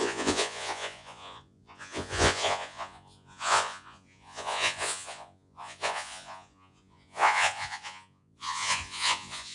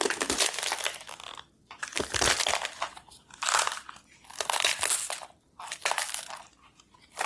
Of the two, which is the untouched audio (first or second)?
second